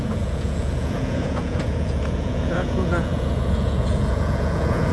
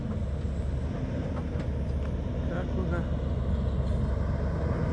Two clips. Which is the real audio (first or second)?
second